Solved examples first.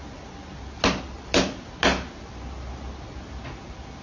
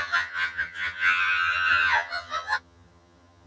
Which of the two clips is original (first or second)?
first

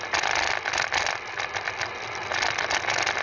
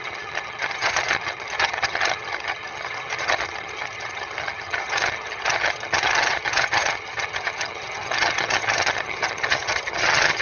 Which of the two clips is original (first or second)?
first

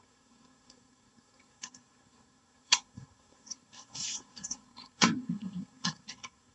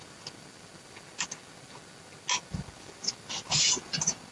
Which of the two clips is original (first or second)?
second